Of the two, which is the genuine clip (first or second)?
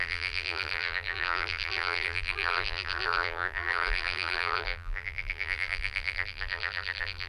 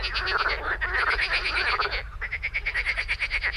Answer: second